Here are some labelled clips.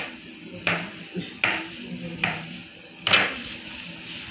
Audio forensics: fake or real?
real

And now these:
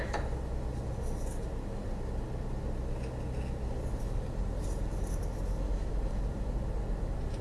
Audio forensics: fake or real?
real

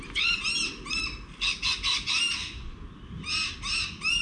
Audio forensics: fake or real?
real